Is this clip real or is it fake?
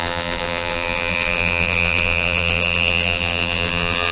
fake